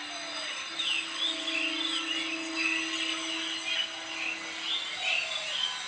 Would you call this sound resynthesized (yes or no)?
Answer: no